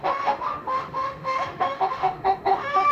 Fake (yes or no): yes